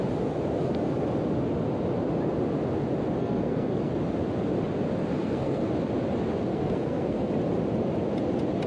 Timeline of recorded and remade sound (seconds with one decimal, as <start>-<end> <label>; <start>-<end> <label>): 0.0-3.2 recorded; 3.2-3.9 remade; 3.9-5.1 recorded; 5.1-5.7 remade; 5.7-6.5 recorded; 6.5-7.3 remade; 7.3-8.7 recorded